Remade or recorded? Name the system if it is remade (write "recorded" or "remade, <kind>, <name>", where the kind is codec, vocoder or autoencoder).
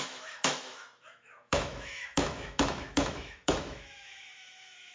remade, autoencoder, DAC-VAE